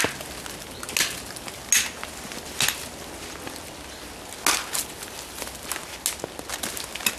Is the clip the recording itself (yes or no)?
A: yes